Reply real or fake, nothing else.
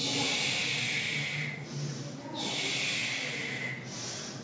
real